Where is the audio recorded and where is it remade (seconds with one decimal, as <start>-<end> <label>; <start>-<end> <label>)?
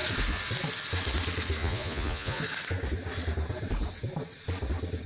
0.0-1.6 recorded; 1.6-2.4 remade; 2.4-5.1 recorded